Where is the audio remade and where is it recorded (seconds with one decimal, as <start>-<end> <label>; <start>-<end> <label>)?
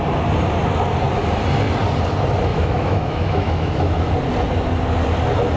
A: 0.0-2.5 recorded; 2.5-4.1 remade; 4.1-5.6 recorded